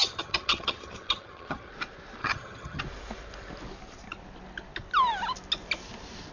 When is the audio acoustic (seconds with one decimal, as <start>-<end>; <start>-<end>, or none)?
1.7-2.2; 2.8-6.3